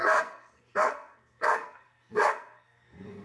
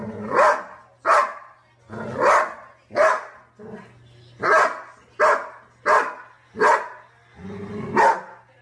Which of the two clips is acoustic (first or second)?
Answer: second